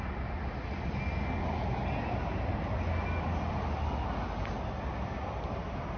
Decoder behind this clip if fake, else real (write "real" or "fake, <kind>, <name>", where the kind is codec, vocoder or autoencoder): real